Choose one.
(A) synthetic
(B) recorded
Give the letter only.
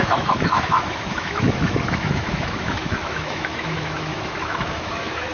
A